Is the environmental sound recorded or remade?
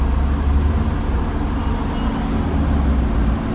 recorded